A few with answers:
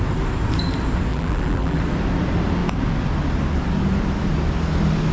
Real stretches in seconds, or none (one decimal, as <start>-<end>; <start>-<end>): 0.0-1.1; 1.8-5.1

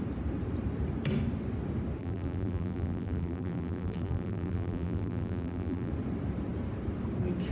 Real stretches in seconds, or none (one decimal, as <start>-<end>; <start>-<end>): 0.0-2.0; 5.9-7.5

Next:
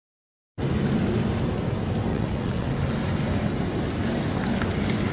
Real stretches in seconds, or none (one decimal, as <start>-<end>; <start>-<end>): 0.0-2.1; 2.7-5.1

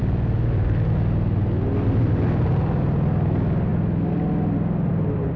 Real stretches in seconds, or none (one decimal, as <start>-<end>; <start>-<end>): 0.0-5.4

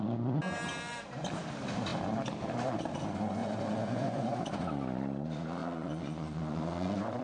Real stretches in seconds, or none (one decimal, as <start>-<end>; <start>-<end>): 0.0-3.4; 4.3-5.6

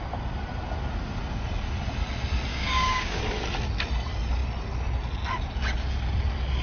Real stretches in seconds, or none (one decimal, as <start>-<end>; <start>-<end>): 0.0-2.5; 3.2-6.6

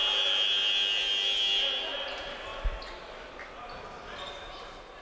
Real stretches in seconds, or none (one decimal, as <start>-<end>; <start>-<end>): 0.0-5.0

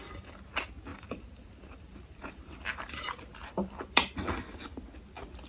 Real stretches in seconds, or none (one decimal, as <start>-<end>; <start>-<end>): 0.0-0.9; 4.2-5.5